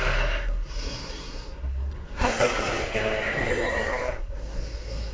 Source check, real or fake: fake